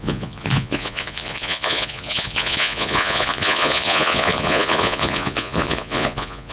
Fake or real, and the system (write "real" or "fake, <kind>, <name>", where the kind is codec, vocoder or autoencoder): fake, vocoder, Vocos